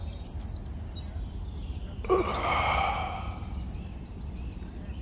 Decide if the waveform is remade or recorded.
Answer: recorded